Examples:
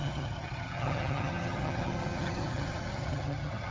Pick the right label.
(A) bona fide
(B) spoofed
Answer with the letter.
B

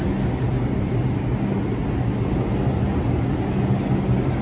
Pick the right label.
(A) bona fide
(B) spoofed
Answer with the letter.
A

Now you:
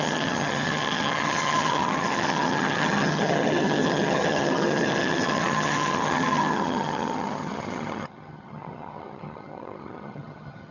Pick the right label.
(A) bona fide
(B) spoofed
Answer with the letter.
B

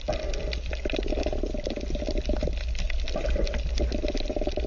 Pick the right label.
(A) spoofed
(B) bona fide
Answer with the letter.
B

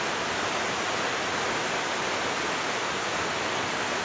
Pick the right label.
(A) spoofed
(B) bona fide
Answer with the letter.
B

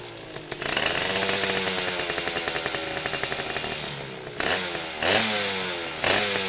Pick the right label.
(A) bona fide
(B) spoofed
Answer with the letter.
A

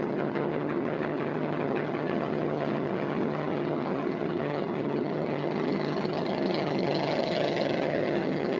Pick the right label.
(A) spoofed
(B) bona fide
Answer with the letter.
A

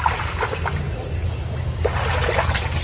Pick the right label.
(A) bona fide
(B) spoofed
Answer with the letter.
A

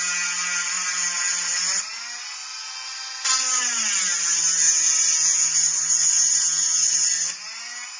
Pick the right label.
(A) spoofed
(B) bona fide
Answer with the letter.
B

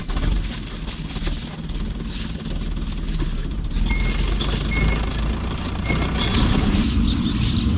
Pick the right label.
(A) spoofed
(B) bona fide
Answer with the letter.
B